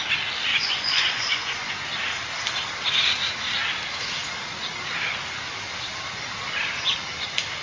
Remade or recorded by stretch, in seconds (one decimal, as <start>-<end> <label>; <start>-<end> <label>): 0.0-0.5 recorded; 0.5-1.7 remade; 1.7-7.6 recorded